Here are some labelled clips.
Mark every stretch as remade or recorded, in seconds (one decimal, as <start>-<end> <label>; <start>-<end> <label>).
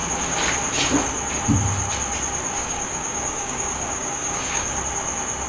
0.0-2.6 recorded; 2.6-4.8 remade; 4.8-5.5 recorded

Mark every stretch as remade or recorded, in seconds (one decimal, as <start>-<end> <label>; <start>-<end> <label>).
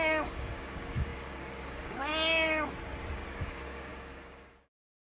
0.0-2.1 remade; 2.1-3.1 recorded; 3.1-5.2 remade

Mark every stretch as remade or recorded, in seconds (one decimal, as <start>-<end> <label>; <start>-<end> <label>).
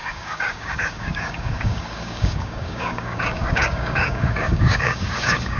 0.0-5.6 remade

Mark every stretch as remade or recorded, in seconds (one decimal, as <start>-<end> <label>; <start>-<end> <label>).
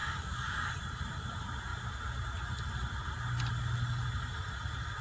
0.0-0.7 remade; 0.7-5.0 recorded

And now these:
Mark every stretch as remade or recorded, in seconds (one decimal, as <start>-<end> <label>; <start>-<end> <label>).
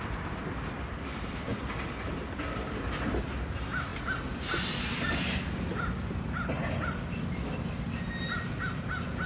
0.0-9.3 recorded